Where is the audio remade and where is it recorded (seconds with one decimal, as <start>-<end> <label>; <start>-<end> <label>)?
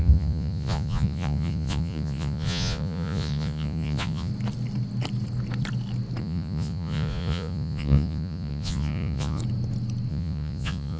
0.0-4.3 remade; 4.3-6.2 recorded; 6.2-9.4 remade; 9.4-10.1 recorded; 10.1-11.0 remade